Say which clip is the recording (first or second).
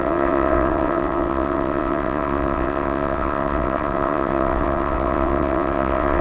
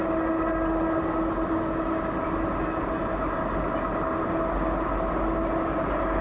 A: second